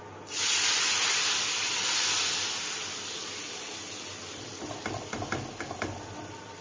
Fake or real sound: real